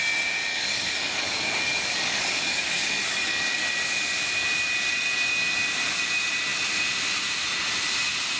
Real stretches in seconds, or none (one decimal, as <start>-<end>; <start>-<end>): 0.0-0.5; 3.6-8.4